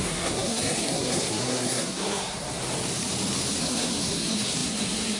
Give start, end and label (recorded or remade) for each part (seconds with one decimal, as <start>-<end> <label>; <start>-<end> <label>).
0.0-2.6 remade; 2.6-3.6 recorded; 3.6-5.2 remade